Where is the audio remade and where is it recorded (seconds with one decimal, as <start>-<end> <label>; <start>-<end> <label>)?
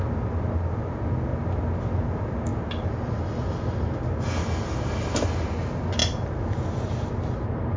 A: 0.0-7.8 recorded